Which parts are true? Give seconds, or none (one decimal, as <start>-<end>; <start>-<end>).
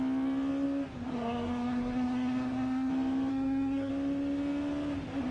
0.0-1.1; 2.9-3.3; 3.9-5.3